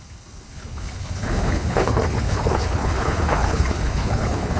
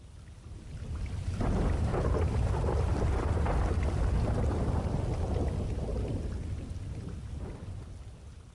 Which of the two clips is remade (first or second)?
first